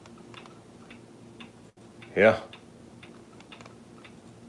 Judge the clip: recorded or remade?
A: recorded